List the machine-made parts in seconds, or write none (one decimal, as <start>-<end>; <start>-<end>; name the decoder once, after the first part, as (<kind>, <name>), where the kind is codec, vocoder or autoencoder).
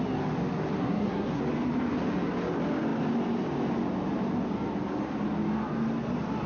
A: 0.8-1.4 (codec, SNAC)